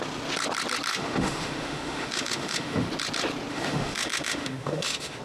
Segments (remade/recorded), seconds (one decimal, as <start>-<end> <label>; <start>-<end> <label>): 0.0-0.9 recorded; 0.9-2.9 remade; 2.9-3.5 recorded; 3.5-5.2 remade

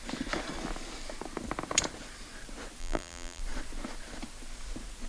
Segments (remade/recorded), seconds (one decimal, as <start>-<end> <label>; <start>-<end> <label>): 0.0-2.8 recorded; 2.8-3.4 remade; 3.4-5.1 recorded

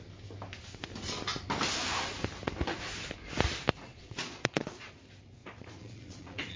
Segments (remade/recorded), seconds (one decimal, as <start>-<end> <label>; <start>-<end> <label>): 0.0-3.9 recorded; 3.9-4.9 remade; 4.9-5.4 recorded; 5.4-6.6 remade